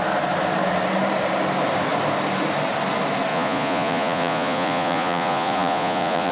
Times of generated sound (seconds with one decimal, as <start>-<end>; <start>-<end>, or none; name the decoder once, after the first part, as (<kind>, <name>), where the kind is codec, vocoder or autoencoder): 3.3-6.3 (vocoder, Vocos)